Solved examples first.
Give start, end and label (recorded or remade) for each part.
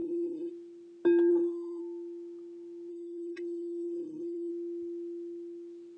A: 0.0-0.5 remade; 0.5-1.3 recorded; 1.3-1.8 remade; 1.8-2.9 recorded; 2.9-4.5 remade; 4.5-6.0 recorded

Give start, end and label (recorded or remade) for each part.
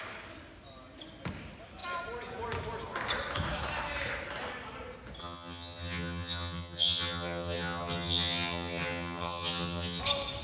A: 0.0-5.2 recorded; 5.2-10.0 remade; 10.0-10.4 recorded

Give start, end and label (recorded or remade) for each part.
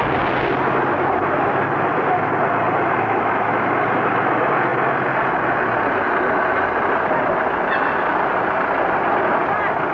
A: 0.0-9.9 recorded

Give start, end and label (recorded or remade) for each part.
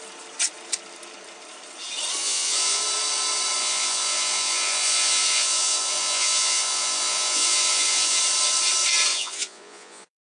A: 0.0-2.2 recorded; 2.2-2.8 remade; 2.8-3.6 recorded; 3.6-8.2 remade; 8.2-9.1 recorded; 9.1-10.2 remade